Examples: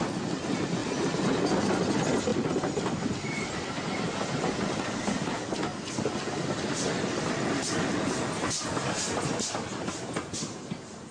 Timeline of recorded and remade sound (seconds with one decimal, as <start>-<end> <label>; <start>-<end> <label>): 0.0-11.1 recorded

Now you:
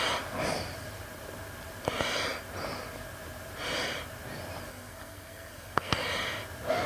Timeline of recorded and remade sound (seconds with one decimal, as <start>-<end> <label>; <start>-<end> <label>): 0.0-4.7 recorded; 4.7-6.0 remade; 6.0-6.9 recorded

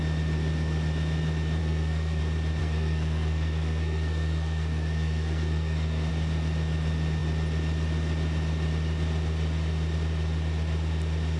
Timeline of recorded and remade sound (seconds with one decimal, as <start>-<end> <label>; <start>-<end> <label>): 0.0-1.6 recorded; 1.6-2.2 remade; 2.2-2.6 recorded; 2.6-6.1 remade; 6.1-11.4 recorded

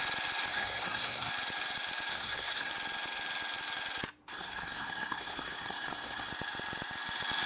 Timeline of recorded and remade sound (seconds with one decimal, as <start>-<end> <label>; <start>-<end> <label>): 0.0-0.5 recorded; 0.5-1.3 remade; 1.3-2.1 recorded; 2.1-2.7 remade; 2.7-4.3 recorded; 4.3-6.3 remade; 6.3-7.5 recorded

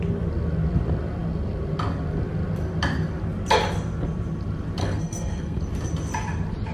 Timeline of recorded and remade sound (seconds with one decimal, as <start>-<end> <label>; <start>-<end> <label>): 0.0-4.8 recorded; 4.8-5.6 remade; 5.6-6.7 recorded